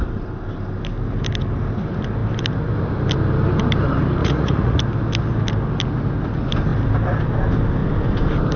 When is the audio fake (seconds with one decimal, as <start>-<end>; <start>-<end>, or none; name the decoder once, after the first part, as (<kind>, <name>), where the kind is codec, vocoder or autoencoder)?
4.2-4.8 (vocoder, Vocos)